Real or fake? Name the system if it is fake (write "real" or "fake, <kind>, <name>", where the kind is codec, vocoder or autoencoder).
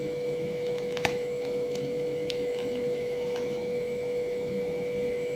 fake, autoencoder, DAC-VAE